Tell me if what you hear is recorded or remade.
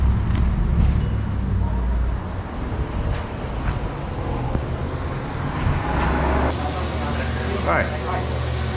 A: recorded